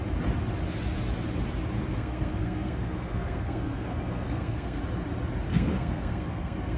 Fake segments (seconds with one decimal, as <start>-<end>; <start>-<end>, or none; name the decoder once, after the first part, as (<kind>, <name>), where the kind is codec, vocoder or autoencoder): 1.9-4.8 (codec, SNAC); 5.5-6.8